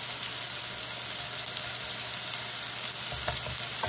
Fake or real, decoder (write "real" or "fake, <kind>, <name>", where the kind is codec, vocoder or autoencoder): real